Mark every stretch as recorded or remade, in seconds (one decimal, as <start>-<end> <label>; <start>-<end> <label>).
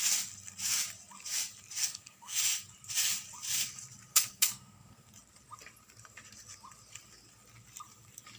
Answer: 0.0-1.8 recorded; 1.8-2.4 remade; 2.4-4.1 recorded; 4.1-5.1 remade; 5.1-8.4 recorded